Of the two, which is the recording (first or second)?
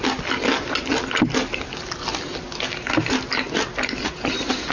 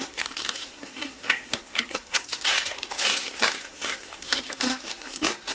first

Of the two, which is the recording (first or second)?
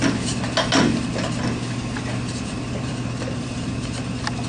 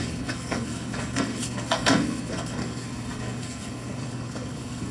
first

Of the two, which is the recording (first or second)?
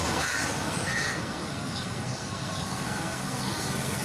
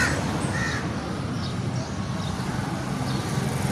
second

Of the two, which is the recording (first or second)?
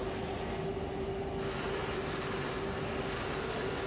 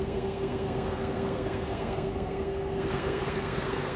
first